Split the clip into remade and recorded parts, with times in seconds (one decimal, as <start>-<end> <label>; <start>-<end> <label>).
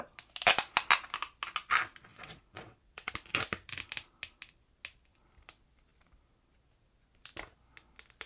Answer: 0.0-2.1 recorded; 2.1-3.1 remade; 3.1-8.3 recorded